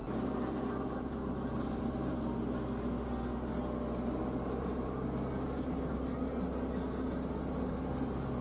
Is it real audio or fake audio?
real